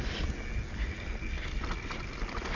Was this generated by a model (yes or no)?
no